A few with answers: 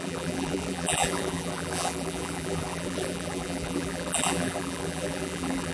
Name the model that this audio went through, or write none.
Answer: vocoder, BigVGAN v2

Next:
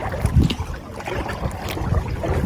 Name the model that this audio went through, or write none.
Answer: none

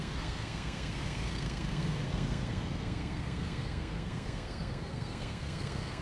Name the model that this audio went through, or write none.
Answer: codec, SNAC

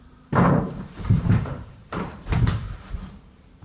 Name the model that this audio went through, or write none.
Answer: vocoder, BigVGAN v2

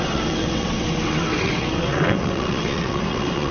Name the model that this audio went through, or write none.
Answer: vocoder, WaveNeXt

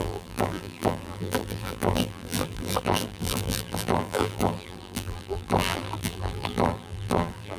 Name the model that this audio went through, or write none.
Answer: vocoder, BigVGAN v2